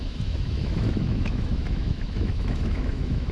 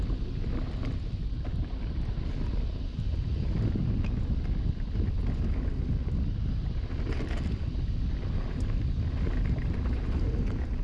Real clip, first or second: second